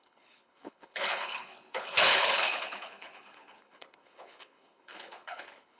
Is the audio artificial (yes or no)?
yes